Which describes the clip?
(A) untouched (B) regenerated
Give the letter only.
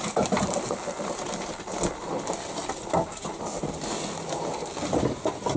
A